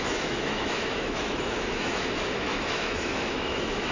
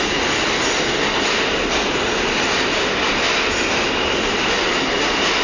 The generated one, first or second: first